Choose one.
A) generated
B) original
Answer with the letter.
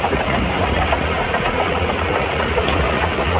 A